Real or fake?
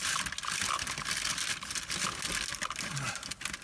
real